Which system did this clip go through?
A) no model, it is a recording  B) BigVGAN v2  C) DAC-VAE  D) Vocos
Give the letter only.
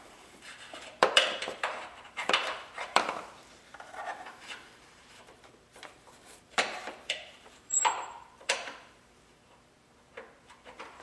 B